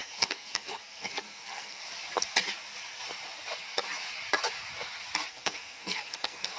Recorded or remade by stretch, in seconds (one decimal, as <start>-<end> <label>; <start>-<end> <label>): 0.0-1.8 remade; 1.8-5.3 recorded; 5.3-6.6 remade